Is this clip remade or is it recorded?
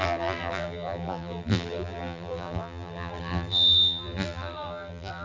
remade